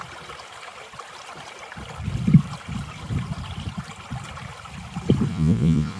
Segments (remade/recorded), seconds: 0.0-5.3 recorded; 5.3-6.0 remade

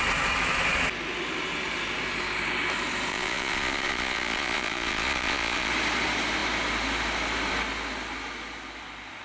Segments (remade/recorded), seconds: 0.0-3.1 recorded; 3.1-5.7 remade; 5.7-9.2 recorded

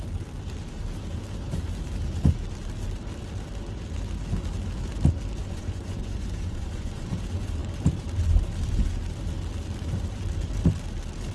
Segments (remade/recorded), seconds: 0.0-5.4 recorded; 5.4-7.1 remade; 7.1-11.3 recorded

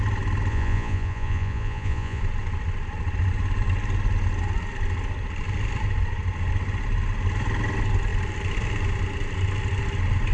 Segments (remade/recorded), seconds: 0.0-0.5 recorded; 0.5-2.2 remade; 2.2-10.3 recorded

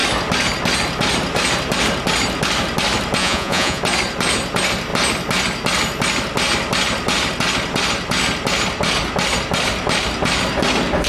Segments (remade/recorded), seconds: 0.0-3.2 recorded; 3.2-3.8 remade; 3.8-11.1 recorded